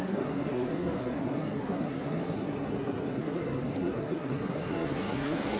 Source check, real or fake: fake